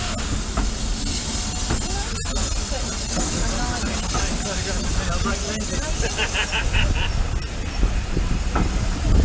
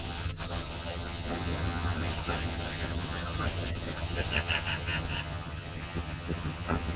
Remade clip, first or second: second